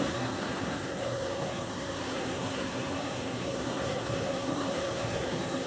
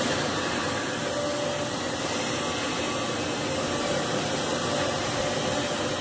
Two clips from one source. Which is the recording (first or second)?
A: second